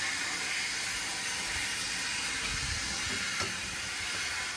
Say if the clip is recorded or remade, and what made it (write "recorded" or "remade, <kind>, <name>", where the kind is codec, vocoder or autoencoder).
recorded